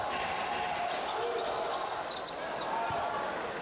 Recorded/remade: recorded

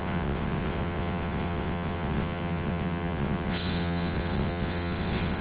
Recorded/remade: remade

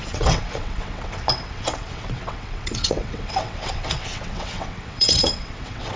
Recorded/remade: remade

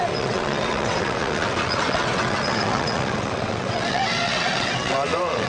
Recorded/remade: remade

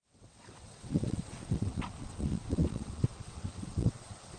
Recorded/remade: remade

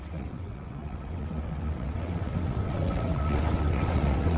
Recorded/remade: remade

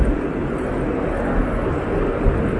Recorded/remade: recorded